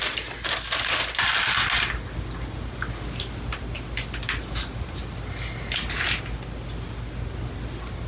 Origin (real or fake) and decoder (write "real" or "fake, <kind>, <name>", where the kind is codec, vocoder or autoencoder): real